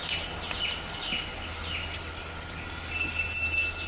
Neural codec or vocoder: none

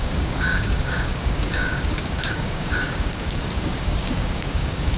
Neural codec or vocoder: codec, DAC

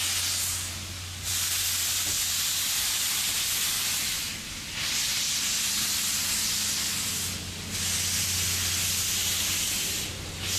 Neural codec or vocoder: none